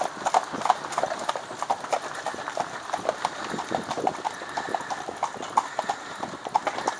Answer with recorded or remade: recorded